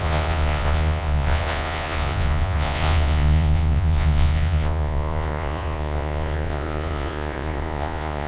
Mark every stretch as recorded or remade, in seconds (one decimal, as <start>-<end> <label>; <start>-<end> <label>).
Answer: 0.0-8.3 remade